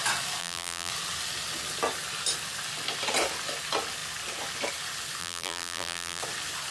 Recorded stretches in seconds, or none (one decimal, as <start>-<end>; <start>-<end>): 0.0-0.4; 0.9-5.2; 6.2-6.7